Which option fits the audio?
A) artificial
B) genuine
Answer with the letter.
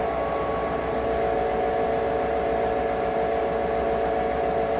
B